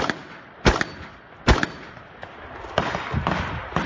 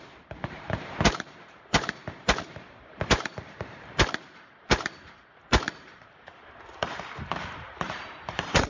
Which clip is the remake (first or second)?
second